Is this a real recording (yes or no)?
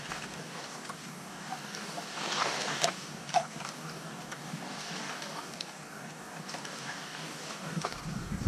no